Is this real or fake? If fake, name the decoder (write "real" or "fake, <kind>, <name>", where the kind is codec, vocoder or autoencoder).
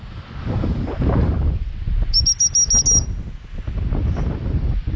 real